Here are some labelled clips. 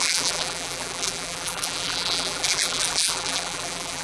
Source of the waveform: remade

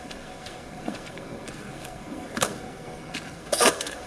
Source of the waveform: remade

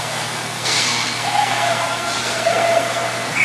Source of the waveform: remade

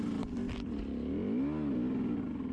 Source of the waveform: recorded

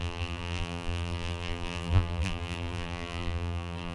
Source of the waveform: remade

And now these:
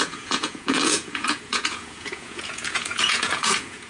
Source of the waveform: remade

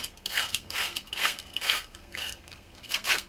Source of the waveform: remade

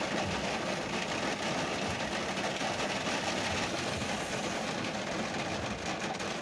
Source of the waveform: recorded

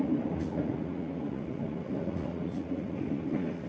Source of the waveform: remade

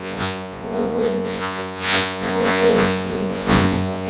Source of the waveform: remade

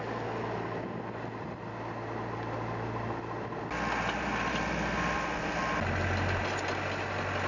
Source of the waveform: recorded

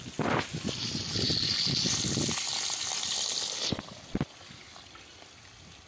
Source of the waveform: recorded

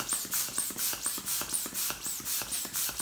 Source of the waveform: remade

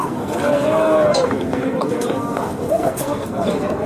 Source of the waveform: remade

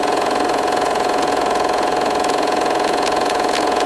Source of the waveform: remade